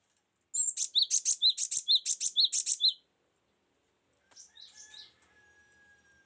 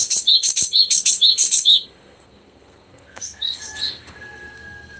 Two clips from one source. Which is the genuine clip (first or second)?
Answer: first